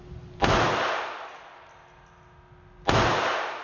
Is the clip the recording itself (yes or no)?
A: yes